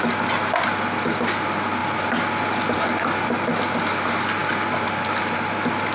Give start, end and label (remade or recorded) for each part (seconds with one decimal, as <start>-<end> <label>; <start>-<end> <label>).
0.0-5.9 recorded